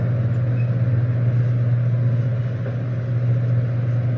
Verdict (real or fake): real